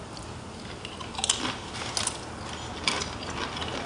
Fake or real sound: real